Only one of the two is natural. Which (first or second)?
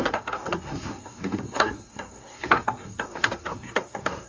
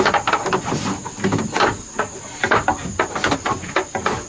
second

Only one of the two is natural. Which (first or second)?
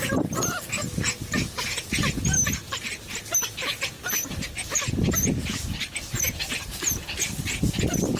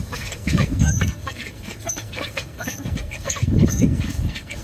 first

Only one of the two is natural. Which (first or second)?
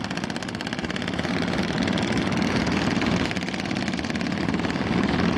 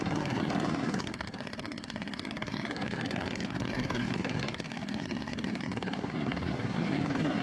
first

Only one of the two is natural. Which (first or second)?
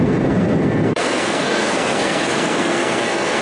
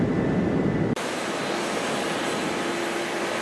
second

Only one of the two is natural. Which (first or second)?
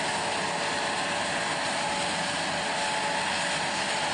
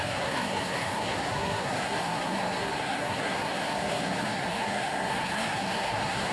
first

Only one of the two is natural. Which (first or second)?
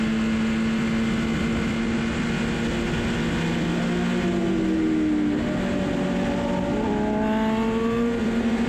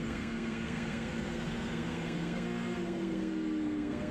first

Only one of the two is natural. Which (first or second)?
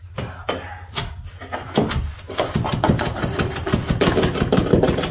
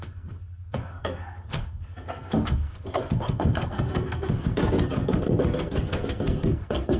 first